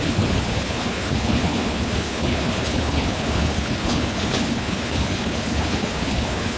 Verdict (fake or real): fake